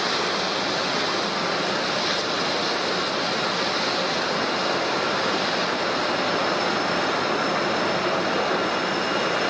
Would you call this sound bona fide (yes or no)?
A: yes